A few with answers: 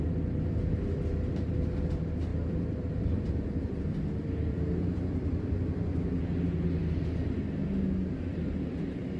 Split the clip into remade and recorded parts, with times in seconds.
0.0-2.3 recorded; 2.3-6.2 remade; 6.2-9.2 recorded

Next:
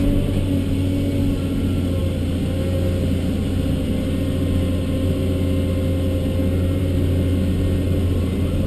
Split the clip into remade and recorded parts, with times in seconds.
0.0-8.7 recorded